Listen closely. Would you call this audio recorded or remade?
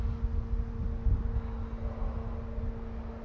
recorded